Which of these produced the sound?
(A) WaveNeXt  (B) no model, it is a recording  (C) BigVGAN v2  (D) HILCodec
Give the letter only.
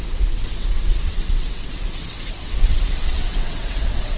A